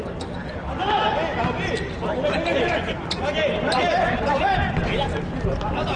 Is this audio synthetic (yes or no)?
no